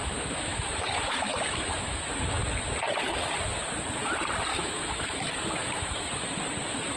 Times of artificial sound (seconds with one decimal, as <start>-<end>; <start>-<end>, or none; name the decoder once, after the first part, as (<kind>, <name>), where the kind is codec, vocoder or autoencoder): 0.0-2.1 (autoencoder, DAC-VAE); 4.5-6.4